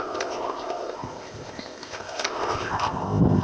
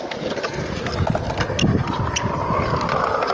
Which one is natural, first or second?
second